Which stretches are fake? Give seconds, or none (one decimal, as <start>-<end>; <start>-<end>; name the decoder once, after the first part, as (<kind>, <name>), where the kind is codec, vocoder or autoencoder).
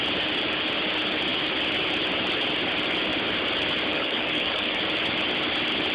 3.9-4.8 (codec, DAC)